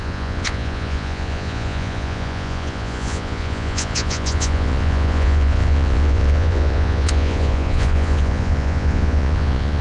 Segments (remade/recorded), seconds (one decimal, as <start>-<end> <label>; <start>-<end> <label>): 0.0-9.8 remade